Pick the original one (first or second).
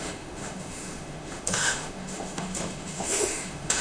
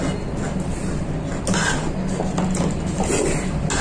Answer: second